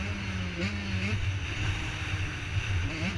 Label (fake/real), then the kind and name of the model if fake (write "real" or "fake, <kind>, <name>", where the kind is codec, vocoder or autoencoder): real